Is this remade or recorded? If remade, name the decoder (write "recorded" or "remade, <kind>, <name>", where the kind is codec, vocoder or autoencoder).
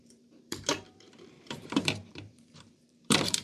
remade, vocoder, BigVGAN v2